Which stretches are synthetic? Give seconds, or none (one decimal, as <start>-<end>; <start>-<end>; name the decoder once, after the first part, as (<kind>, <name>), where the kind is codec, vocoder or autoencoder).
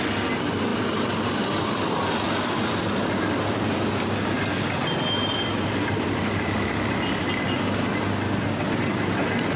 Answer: none